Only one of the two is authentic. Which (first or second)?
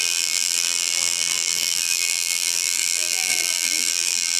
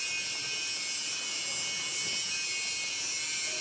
second